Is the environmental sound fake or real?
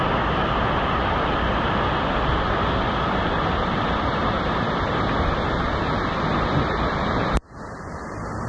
real